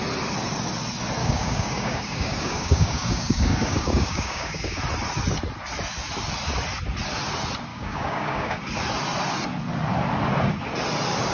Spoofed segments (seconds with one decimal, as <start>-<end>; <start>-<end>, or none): 1.2-4.8; 7.7-8.6